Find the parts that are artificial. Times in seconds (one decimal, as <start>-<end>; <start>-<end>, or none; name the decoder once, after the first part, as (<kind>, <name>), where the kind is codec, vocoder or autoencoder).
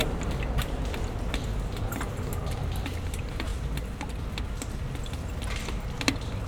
none